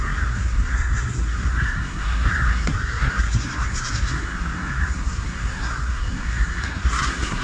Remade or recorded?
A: remade